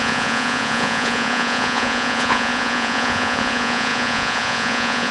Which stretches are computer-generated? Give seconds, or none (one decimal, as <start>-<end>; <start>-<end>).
0.0-5.1